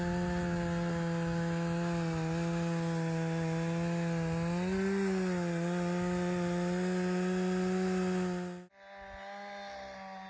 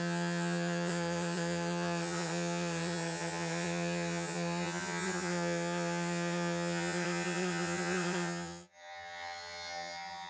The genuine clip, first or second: first